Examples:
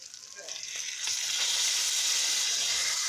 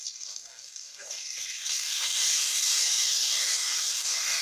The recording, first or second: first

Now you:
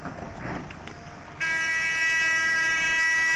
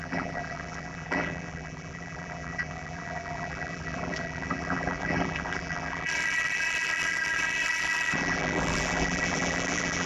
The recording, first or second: first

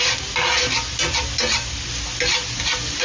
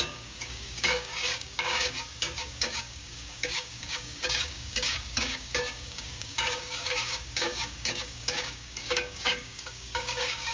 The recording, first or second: first